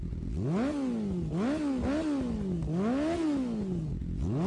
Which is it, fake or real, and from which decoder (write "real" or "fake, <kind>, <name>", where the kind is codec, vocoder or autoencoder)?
real